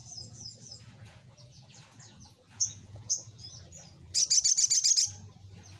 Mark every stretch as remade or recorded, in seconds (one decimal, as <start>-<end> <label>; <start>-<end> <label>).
0.0-3.5 remade; 3.5-5.8 recorded